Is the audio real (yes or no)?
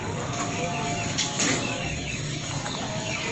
no